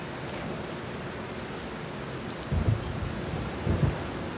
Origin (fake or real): real